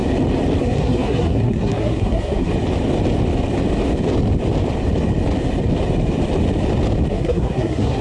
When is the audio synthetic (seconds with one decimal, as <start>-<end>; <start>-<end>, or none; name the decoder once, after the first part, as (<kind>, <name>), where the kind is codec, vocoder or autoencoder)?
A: 0.6-2.5 (codec, SNAC); 7.1-8.0